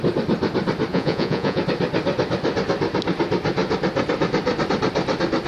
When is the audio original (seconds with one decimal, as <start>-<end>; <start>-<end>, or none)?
0.0-0.9; 1.6-5.5